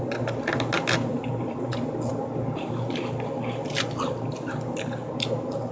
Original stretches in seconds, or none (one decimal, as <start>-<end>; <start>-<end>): 0.0-5.7